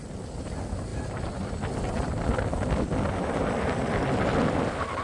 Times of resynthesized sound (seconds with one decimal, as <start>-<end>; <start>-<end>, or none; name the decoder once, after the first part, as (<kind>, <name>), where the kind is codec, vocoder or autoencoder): none